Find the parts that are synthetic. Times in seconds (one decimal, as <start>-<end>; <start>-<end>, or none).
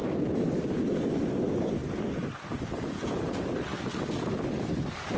0.0-0.8; 1.8-2.6